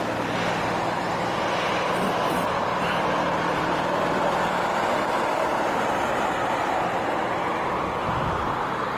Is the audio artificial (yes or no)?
yes